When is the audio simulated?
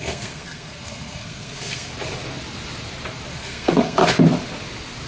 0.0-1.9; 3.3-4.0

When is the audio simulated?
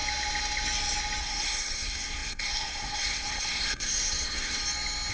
1.2-4.6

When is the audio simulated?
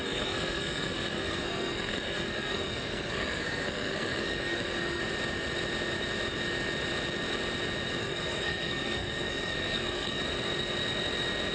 0.0-5.0; 8.0-10.2